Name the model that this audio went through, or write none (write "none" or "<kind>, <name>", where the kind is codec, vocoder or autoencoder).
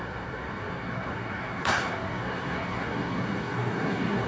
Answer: codec, SNAC